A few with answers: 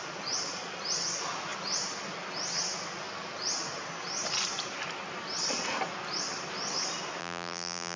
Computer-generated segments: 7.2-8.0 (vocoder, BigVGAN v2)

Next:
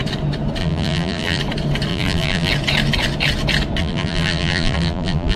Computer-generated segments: 0.6-1.4 (vocoder, BigVGAN v2); 1.9-2.5; 3.8-5.4